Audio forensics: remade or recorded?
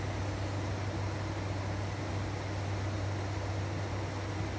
recorded